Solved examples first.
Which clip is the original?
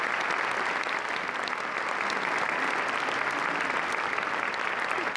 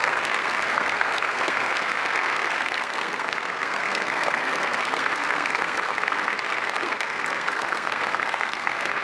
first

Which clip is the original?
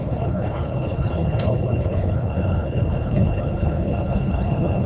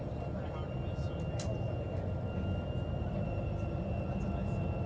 second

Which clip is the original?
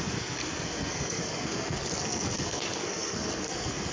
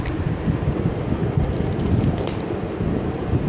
second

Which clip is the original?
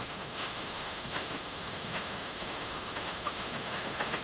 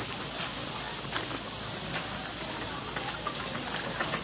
second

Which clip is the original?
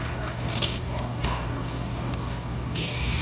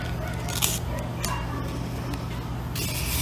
second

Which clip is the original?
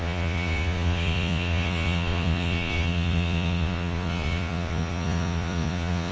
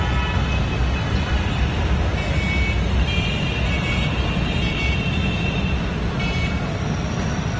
second